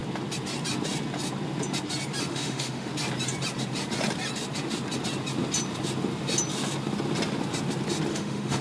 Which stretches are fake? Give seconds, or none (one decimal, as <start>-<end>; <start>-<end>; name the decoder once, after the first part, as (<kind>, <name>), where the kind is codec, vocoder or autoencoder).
2.3-2.9 (autoencoder, DAC-VAE); 8.1-8.6